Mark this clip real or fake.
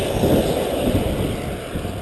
real